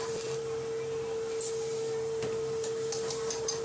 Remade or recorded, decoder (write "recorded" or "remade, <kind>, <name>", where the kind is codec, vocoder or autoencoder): recorded